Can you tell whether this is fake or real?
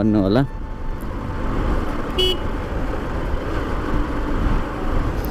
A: real